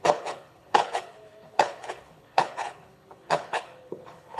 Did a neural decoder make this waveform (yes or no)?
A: yes